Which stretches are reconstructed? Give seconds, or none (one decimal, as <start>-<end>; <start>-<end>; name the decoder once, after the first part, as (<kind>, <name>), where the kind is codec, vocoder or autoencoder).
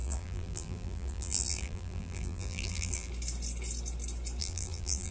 0.0-3.1 (vocoder, BigVGAN v2); 4.4-5.1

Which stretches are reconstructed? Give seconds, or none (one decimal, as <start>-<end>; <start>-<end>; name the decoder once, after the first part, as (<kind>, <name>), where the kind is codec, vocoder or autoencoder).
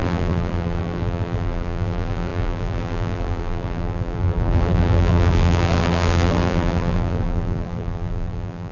0.0-8.7 (vocoder, BigVGAN v2)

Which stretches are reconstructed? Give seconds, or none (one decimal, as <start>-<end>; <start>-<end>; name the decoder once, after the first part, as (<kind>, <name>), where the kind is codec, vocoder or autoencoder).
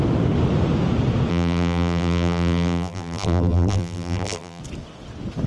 1.3-4.6 (vocoder, BigVGAN v2)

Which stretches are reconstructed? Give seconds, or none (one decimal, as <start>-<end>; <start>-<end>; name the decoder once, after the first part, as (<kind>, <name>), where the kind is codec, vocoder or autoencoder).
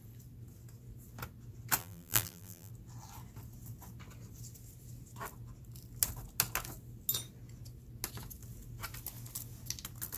1.8-2.7 (vocoder, BigVGAN v2)